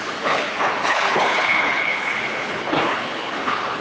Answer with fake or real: fake